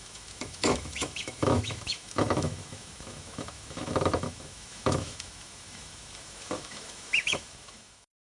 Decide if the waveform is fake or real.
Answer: fake